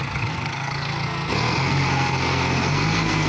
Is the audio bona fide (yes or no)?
no